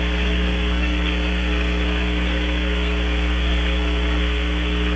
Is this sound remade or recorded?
remade